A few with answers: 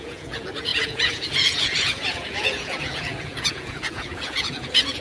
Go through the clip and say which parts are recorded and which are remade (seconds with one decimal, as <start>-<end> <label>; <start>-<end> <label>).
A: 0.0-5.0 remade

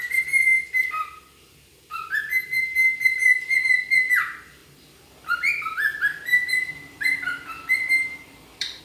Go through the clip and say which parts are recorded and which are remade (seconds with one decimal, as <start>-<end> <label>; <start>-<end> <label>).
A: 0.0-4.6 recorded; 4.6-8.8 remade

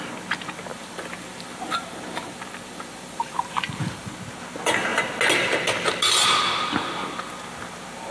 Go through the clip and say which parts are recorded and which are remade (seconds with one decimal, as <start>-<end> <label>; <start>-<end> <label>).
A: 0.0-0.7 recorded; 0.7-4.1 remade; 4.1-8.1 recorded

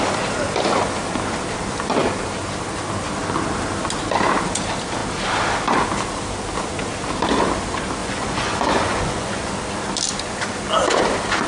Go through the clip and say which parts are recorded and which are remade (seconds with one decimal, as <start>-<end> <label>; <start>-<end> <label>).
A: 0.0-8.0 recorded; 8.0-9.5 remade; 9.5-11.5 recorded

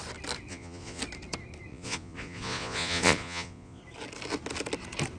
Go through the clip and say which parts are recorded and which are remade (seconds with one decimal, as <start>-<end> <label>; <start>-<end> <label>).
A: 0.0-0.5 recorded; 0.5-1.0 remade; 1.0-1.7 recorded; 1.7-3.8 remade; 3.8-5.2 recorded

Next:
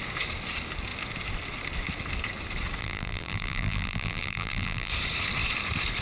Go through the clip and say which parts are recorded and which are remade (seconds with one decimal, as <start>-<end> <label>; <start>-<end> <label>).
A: 0.0-2.8 recorded; 2.8-4.9 remade; 4.9-6.0 recorded